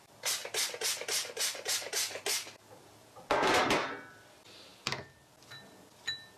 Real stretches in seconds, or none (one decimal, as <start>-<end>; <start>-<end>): 0.0-6.4